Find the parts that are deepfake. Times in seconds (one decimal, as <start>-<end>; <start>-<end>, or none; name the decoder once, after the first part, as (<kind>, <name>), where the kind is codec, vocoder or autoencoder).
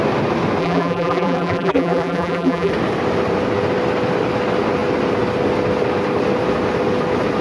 0.6-2.7 (vocoder, BigVGAN v2)